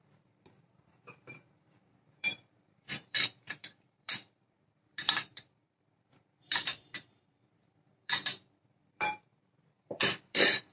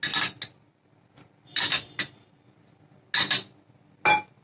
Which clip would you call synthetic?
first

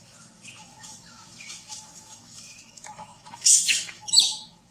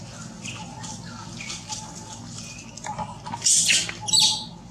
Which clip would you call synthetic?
first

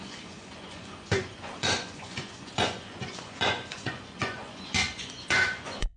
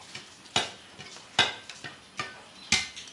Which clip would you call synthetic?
first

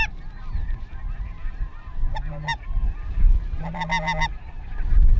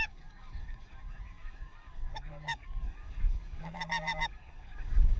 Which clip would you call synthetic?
second